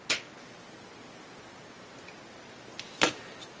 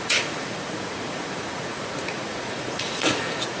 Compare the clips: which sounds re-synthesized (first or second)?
second